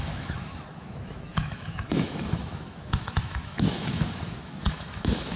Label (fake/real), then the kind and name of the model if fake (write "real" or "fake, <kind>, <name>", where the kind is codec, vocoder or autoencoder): fake, autoencoder, DAC-VAE